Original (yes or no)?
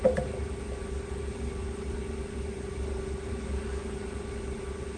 yes